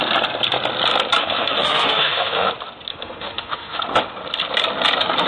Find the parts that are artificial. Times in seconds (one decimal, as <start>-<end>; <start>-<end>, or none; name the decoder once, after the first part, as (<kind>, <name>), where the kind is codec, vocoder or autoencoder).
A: 1.2-2.5 (autoencoder, DAC-VAE); 2.9-3.8